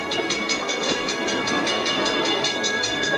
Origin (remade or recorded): remade